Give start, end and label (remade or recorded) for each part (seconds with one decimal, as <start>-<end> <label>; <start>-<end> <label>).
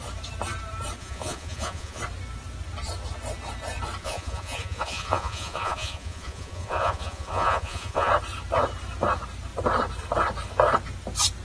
0.0-1.0 recorded; 1.0-2.0 remade; 2.0-4.0 recorded; 4.0-8.1 remade; 8.1-11.4 recorded